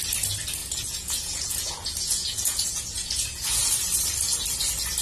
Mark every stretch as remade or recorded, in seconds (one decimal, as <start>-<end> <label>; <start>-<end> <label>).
0.0-0.6 recorded; 0.6-3.6 remade; 3.6-5.0 recorded